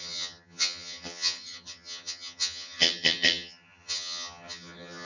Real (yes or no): no